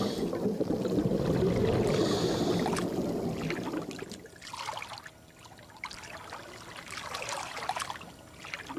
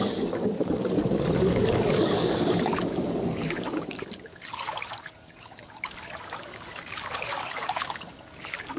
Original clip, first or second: first